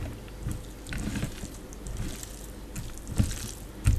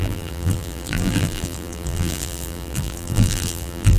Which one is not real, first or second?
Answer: second